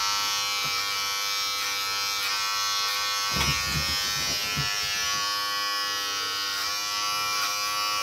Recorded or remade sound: recorded